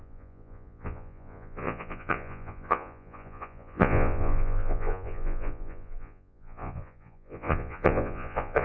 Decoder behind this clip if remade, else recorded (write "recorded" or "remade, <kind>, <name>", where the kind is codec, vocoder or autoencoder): remade, vocoder, Vocos